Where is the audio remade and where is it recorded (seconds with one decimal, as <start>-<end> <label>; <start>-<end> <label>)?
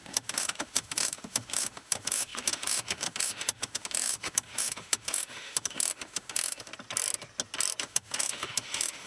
0.0-6.7 remade; 6.7-7.8 recorded; 7.8-9.1 remade